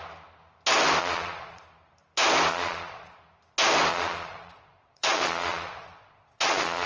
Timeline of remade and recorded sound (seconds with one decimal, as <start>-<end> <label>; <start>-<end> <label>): 0.0-1.0 recorded; 1.0-1.6 remade; 1.6-2.5 recorded; 2.5-3.2 remade; 3.2-3.9 recorded; 3.9-6.9 remade